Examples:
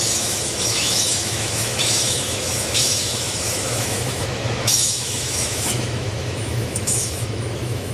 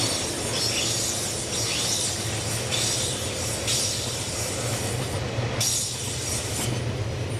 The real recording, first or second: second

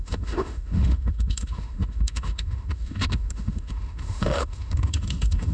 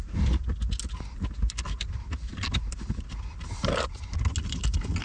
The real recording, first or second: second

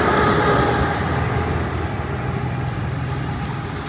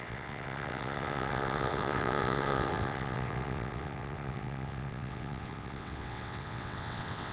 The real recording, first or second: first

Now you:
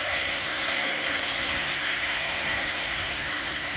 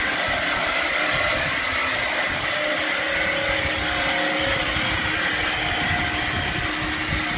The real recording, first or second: second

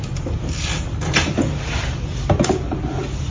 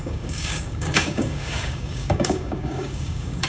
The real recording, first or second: first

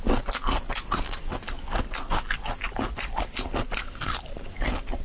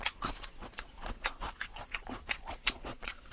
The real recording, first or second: first